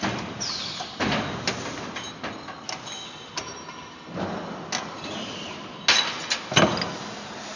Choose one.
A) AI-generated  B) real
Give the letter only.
B